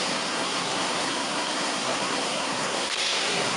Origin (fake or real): fake